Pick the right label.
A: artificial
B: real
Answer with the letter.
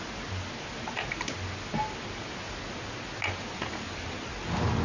B